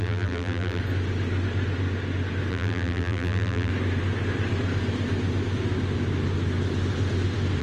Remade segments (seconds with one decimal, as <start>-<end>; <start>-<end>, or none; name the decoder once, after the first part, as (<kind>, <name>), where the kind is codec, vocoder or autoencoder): 0.0-0.8 (vocoder, BigVGAN v2); 2.5-3.7